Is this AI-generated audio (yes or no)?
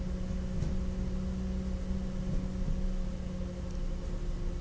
no